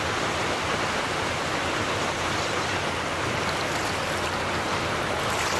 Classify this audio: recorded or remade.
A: recorded